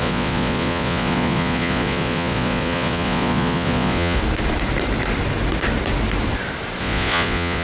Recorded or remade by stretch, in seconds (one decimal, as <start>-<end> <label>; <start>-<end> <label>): 0.0-4.2 remade; 4.2-6.8 recorded; 6.8-7.6 remade